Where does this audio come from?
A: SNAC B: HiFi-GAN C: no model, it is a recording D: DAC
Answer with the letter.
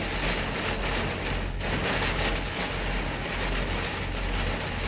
C